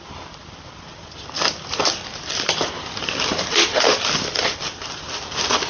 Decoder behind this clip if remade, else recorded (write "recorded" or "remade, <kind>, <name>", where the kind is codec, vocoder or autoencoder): recorded